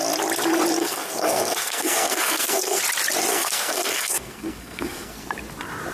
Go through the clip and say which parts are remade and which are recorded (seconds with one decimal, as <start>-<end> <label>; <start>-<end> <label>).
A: 0.0-0.8 recorded; 0.8-2.8 remade; 2.8-3.3 recorded; 3.3-5.3 remade; 5.3-5.9 recorded